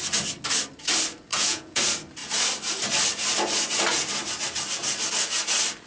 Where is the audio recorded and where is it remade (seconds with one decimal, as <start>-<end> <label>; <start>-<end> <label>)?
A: 0.0-1.3 recorded; 1.3-1.8 remade; 1.8-5.9 recorded